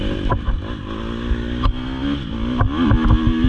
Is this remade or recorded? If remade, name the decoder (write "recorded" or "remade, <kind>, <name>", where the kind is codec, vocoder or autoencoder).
recorded